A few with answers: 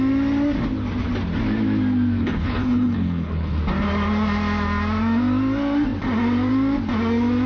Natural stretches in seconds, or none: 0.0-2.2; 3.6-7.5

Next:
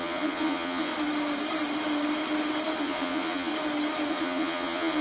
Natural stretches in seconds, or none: 0.9-2.8; 3.5-4.1